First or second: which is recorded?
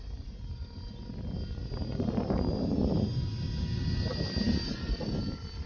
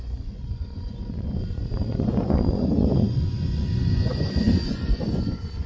first